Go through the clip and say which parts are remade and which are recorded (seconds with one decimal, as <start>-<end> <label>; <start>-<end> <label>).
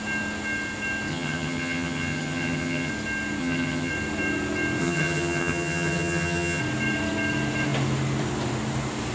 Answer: 0.0-1.1 recorded; 1.1-2.9 remade; 2.9-3.4 recorded; 3.4-3.9 remade; 3.9-4.8 recorded; 4.8-6.6 remade; 6.6-9.1 recorded